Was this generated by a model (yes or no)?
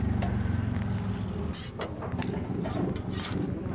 no